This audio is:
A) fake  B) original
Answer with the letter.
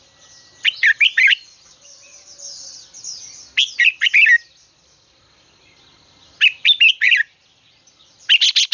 B